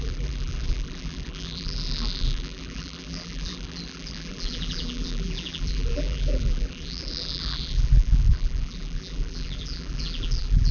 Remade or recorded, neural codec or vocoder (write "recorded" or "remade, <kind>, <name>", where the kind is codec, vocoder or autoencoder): remade, vocoder, BigVGAN v2